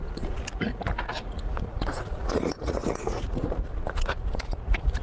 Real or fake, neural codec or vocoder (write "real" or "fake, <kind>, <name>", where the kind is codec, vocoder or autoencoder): fake, vocoder, Vocos